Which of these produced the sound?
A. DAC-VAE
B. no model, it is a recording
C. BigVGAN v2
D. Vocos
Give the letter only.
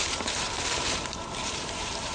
C